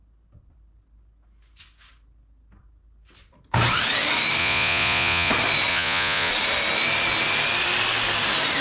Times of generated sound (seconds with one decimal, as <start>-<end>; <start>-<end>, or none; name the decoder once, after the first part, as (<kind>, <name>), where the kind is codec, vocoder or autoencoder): 4.4-5.3 (vocoder, Vocos); 5.7-6.3